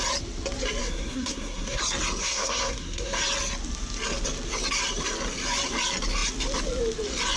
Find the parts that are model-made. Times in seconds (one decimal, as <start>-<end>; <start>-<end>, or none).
0.8-1.8; 2.2-3.2